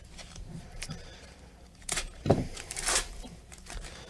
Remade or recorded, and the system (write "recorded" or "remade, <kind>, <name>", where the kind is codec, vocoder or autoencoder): remade, vocoder, BigVGAN v2